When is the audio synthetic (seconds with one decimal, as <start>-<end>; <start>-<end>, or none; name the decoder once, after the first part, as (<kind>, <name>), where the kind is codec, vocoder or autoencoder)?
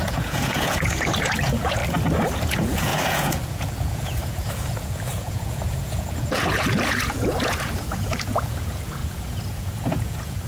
0.0-1.8 (vocoder, Vocos); 2.3-10.5